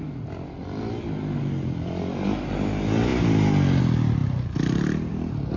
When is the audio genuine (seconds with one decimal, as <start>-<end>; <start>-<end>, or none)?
0.0-5.6